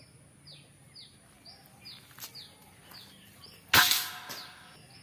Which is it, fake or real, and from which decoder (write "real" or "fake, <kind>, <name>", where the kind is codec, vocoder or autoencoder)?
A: real